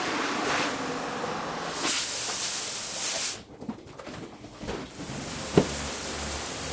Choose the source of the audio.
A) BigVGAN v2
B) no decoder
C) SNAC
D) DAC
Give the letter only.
B